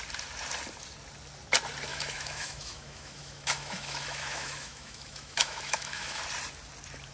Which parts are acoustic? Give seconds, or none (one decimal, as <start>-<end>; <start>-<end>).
0.0-1.9; 6.2-7.1

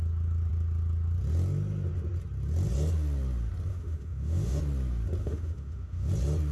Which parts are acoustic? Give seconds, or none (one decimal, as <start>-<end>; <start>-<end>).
0.0-3.7; 4.6-5.2; 6.1-6.5

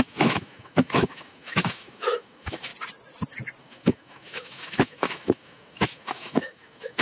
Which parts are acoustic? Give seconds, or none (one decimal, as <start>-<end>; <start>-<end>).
2.7-3.6

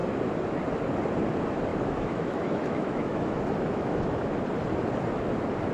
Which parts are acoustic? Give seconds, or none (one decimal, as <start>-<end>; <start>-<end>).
0.0-1.7; 4.4-5.7

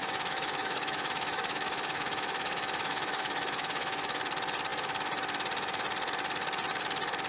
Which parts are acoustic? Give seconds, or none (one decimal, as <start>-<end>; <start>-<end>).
4.2-7.3

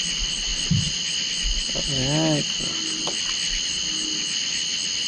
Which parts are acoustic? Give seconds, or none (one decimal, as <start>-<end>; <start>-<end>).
0.0-5.1

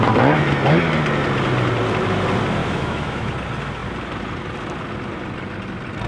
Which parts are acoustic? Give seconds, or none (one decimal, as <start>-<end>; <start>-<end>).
0.0-2.6; 3.3-6.1

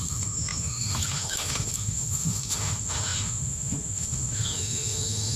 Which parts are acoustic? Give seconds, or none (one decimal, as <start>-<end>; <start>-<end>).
none